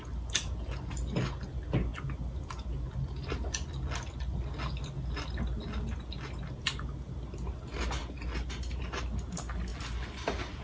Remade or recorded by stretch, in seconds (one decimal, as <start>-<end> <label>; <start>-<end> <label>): 0.0-10.6 recorded